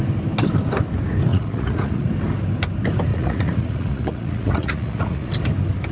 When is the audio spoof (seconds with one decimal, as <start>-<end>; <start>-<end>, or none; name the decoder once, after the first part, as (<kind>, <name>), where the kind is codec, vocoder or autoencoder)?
1.3-2.1 (vocoder, Vocos); 3.1-5.3